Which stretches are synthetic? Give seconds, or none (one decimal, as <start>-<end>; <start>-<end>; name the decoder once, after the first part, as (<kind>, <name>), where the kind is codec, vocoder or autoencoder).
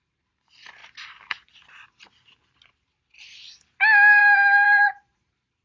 0.0-0.8 (vocoder, BigVGAN v2); 4.2-5.6